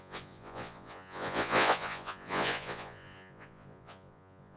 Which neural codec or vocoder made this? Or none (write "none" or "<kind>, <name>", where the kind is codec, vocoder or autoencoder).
vocoder, Vocos